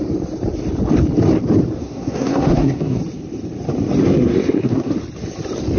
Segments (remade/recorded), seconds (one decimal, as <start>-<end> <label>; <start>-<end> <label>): 0.0-1.8 recorded; 1.8-3.0 remade; 3.0-4.0 recorded; 4.0-4.9 remade; 4.9-5.8 recorded